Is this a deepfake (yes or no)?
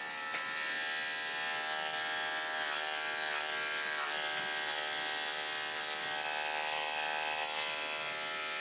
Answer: no